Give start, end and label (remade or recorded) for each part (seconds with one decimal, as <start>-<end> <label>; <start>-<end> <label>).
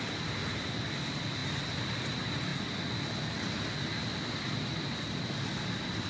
0.0-0.4 remade; 0.4-0.9 recorded; 0.9-1.4 remade; 1.4-2.0 recorded; 2.0-2.5 remade; 2.5-4.1 recorded; 4.1-6.1 remade